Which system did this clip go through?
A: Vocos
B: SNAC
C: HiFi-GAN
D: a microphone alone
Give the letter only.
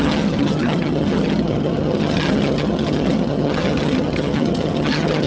C